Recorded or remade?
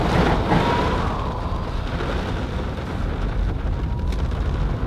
recorded